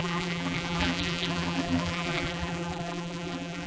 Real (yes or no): no